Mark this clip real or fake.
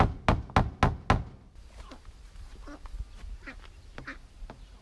real